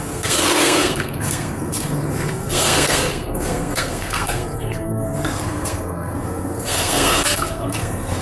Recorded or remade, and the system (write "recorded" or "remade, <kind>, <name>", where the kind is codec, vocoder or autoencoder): remade, codec, SNAC